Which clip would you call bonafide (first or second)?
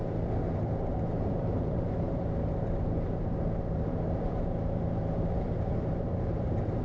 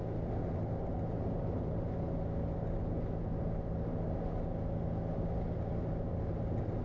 second